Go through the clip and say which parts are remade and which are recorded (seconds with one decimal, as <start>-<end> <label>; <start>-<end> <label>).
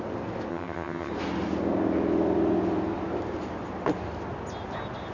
0.0-0.5 recorded; 0.5-1.1 remade; 1.1-5.1 recorded